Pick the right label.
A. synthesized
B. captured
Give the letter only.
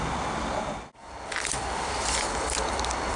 B